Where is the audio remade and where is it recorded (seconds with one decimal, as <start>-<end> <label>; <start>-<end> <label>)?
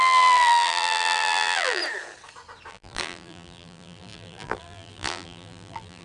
0.0-1.8 remade; 1.8-2.7 recorded; 2.7-6.0 remade